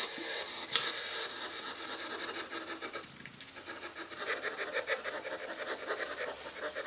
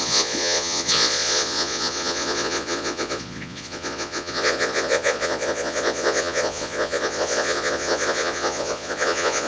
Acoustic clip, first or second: first